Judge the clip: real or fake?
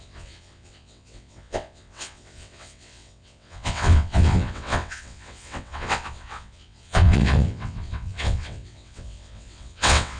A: fake